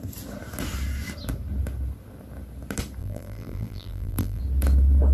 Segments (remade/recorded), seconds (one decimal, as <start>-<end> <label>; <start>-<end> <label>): 0.0-3.0 recorded; 3.0-4.4 remade; 4.4-5.1 recorded